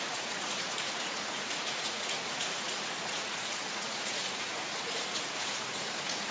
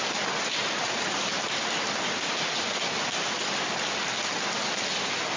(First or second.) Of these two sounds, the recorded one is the second